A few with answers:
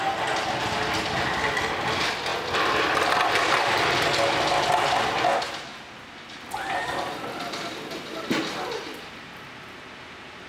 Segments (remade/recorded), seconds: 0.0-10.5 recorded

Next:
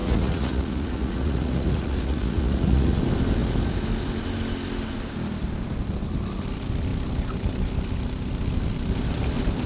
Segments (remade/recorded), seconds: 0.0-3.0 remade; 3.0-9.7 recorded